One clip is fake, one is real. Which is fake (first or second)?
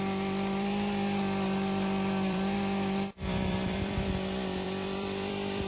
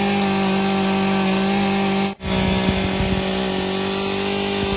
first